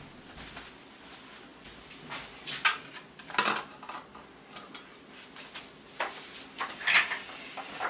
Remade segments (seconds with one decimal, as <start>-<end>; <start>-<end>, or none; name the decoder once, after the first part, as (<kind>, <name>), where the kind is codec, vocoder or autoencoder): none